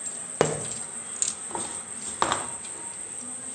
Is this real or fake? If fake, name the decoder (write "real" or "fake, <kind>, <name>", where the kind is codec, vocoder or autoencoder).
real